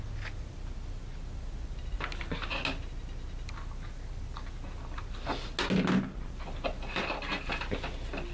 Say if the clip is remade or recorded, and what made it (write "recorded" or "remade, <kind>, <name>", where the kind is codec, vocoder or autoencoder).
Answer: recorded